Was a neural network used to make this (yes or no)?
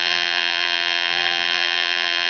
yes